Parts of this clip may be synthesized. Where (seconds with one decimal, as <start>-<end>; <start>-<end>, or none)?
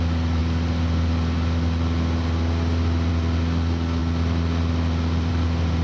none